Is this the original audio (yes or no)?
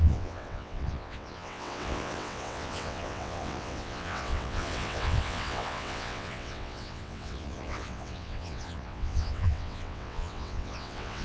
no